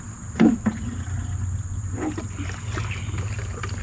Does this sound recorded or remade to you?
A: recorded